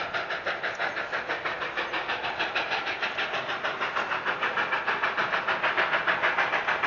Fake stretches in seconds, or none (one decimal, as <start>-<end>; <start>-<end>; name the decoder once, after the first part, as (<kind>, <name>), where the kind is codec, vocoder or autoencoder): none